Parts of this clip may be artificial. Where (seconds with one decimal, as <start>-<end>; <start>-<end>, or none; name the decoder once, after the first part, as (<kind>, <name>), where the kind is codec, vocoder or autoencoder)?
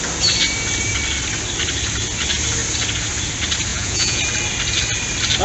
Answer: 3.7-4.2 (vocoder, Vocos)